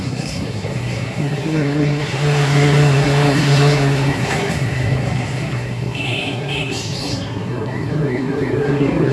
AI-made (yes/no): yes